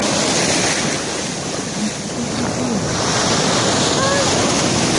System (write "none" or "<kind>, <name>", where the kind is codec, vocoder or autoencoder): none